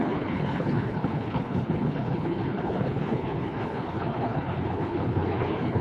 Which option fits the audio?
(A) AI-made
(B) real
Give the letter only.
A